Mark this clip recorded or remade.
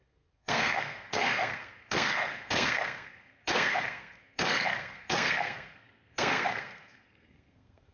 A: remade